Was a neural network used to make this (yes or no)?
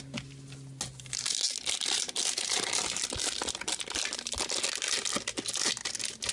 no